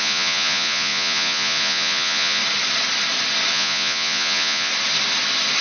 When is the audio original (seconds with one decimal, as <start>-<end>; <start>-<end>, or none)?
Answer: 2.4-3.5; 4.7-5.6